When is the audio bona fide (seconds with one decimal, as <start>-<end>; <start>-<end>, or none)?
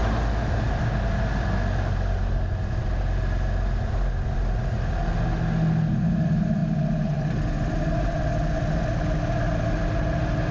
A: 0.0-10.5